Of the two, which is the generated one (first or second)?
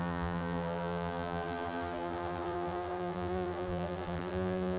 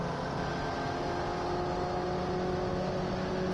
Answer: first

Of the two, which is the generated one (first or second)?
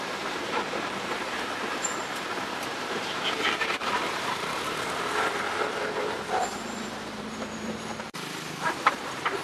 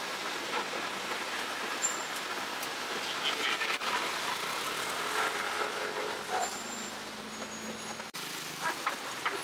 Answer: first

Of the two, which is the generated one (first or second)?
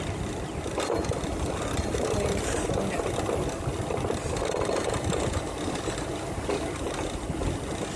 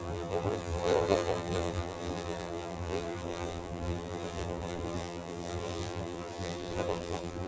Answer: second